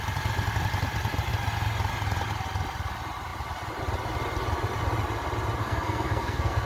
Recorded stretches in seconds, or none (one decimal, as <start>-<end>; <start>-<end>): 0.0-5.6